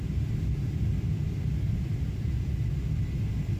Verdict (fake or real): real